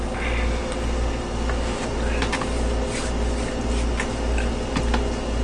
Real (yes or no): yes